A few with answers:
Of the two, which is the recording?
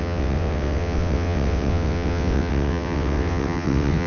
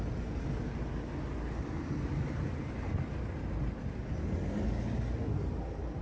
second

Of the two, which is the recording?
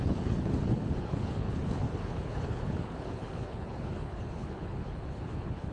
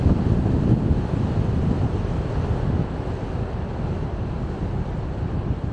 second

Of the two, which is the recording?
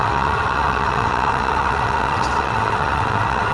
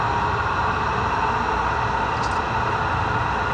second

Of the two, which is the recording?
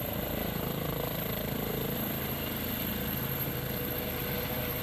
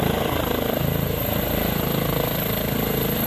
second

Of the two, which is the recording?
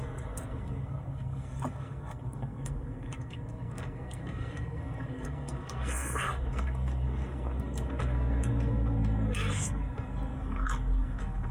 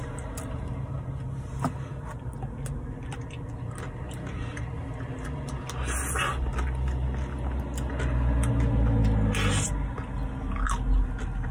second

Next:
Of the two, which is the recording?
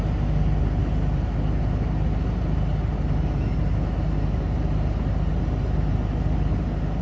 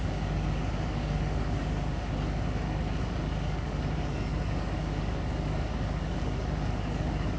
first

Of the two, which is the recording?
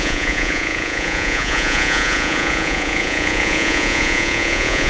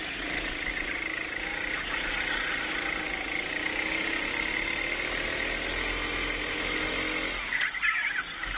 second